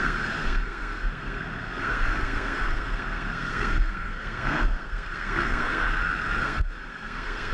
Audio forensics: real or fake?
fake